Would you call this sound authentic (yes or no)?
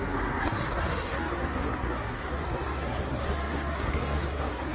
no